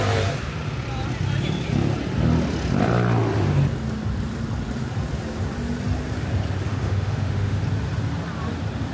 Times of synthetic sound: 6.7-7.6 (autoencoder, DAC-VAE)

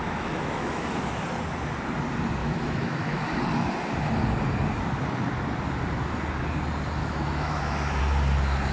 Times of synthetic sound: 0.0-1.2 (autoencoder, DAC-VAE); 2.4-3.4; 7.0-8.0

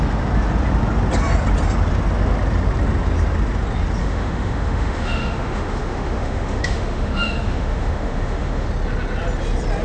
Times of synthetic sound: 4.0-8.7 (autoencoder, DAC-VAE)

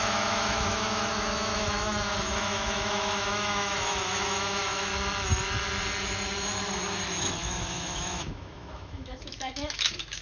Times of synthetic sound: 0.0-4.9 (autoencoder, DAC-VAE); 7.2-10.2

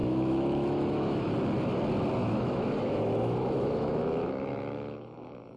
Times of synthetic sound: 0.0-1.3 (autoencoder, DAC-VAE); 2.2-5.6